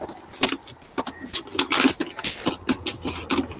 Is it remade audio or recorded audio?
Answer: recorded